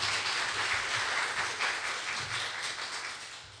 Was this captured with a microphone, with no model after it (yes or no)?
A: yes